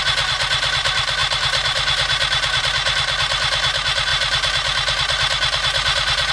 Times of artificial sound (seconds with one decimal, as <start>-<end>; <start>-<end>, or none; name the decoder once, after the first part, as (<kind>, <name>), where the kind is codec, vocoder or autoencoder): none